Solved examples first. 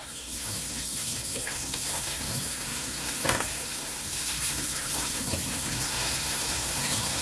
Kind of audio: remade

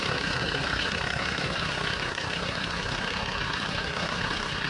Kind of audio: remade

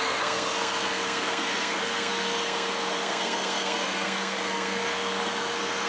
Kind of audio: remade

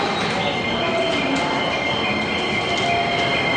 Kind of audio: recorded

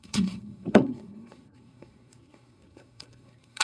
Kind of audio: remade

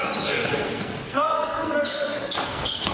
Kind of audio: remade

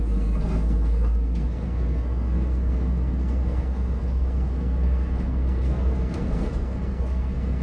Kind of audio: remade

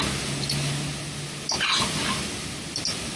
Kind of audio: recorded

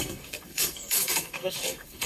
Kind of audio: remade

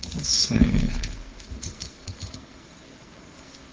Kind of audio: remade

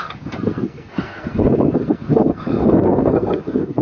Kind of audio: remade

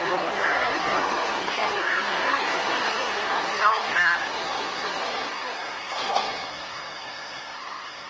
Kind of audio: remade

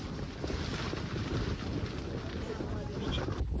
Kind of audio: recorded